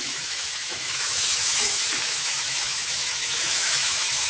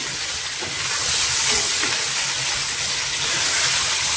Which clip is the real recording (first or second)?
second